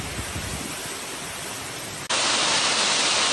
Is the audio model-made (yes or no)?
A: no